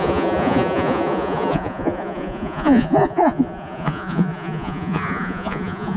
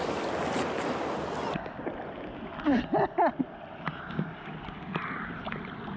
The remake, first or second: first